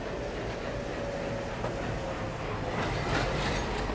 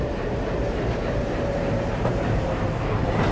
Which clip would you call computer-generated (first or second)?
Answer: second